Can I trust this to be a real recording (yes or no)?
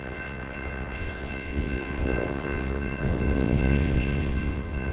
no